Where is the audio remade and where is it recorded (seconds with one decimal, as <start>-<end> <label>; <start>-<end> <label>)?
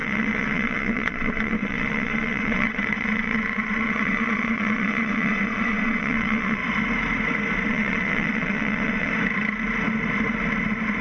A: 0.0-6.6 remade; 6.6-7.7 recorded; 7.7-9.1 remade; 9.1-11.0 recorded